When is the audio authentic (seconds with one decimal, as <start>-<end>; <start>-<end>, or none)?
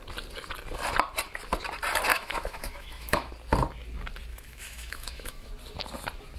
0.0-2.1; 3.3-4.3; 5.5-6.4